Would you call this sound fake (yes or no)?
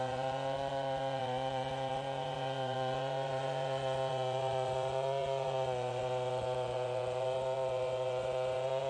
yes